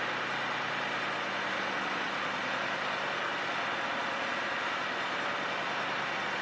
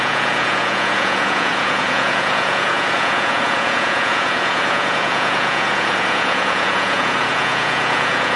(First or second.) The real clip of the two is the first